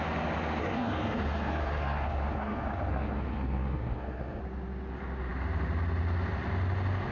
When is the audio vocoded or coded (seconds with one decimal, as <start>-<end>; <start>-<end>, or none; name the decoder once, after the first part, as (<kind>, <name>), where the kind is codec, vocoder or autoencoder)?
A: 0.6-4.4 (codec, SNAC)